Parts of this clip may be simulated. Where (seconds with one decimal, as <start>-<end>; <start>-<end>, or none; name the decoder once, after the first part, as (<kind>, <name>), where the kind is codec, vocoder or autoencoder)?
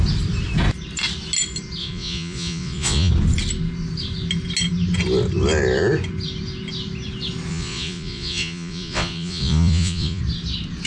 1.8-3.1 (vocoder, Vocos); 7.5-10.2